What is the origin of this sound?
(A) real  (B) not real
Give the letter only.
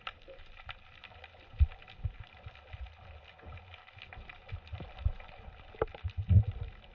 A